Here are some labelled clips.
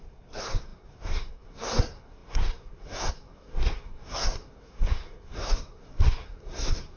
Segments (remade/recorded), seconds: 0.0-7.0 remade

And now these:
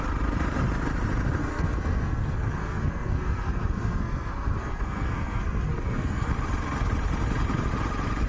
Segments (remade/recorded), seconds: 0.0-1.4 recorded; 1.4-6.3 remade; 6.3-8.3 recorded